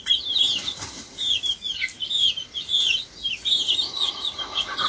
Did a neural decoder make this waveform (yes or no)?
no